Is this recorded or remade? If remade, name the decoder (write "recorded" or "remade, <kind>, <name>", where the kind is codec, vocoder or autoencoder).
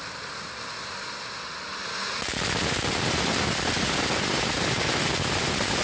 recorded